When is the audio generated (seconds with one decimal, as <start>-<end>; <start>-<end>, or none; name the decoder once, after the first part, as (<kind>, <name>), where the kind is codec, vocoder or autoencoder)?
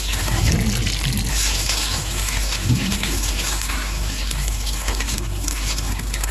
0.0-0.5 (codec, SNAC); 1.3-6.3